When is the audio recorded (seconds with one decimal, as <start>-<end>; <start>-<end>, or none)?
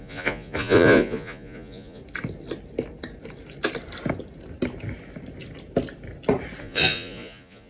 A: 2.0-6.6